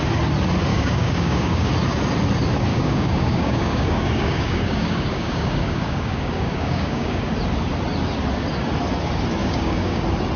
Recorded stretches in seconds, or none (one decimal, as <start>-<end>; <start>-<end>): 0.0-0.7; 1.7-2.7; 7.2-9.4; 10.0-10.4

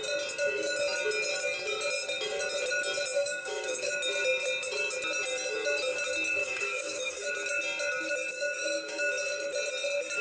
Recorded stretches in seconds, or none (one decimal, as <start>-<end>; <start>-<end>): 0.0-3.2; 3.9-6.4; 7.3-8.3; 9.1-10.2

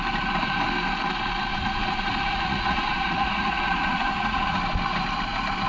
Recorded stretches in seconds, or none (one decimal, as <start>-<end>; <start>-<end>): 0.0-1.5; 4.6-5.7

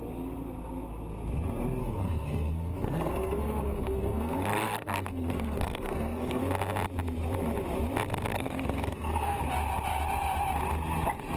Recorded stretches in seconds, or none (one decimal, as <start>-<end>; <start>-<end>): 0.0-1.8; 6.4-8.3; 9.4-11.4

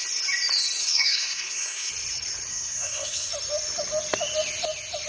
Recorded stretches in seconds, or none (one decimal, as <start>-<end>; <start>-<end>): 0.0-0.8; 1.9-2.5; 3.3-5.1